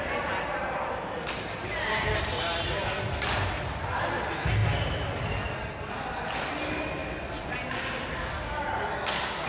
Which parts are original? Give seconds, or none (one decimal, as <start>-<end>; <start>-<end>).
0.0-7.0; 8.9-9.5